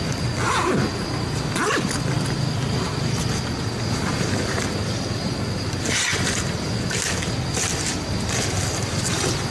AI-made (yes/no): no